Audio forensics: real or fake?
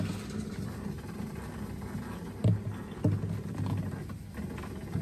real